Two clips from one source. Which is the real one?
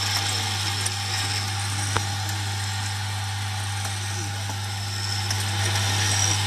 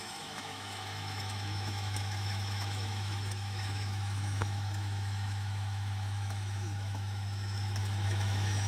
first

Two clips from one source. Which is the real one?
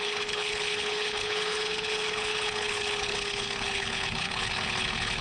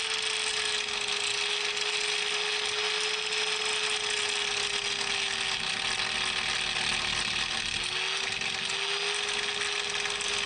second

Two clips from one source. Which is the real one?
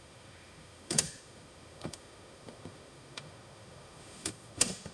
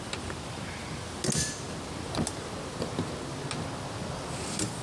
second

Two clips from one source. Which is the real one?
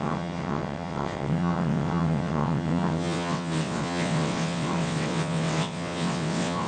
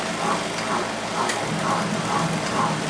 second